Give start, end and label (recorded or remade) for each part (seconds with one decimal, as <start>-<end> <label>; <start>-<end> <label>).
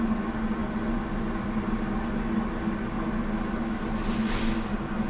0.0-5.1 recorded